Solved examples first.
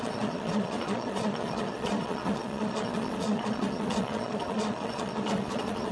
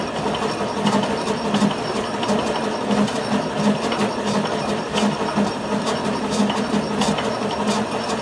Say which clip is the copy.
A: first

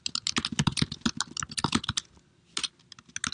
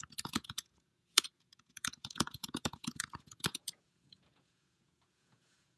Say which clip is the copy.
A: second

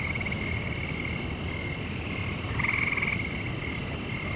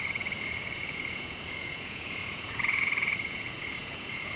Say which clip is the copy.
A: second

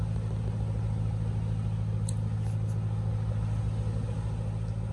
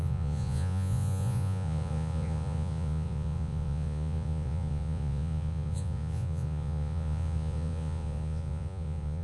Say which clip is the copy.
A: second